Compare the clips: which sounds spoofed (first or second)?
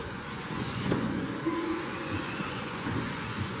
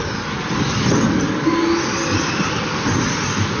first